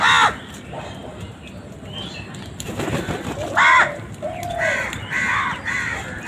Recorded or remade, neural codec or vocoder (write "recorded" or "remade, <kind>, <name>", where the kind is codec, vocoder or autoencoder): recorded